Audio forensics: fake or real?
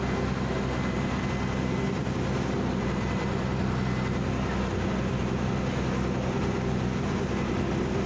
real